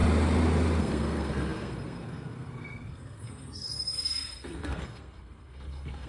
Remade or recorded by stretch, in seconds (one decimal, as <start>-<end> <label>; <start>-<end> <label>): 0.0-0.8 recorded; 0.8-6.1 remade